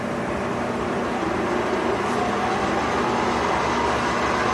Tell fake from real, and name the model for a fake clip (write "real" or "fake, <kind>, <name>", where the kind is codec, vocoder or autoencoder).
real